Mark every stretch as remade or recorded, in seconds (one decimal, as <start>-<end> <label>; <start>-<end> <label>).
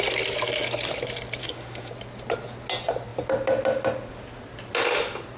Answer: 0.0-1.4 recorded; 1.4-1.9 remade; 1.9-5.4 recorded